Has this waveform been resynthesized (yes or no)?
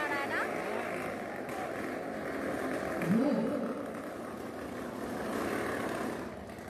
no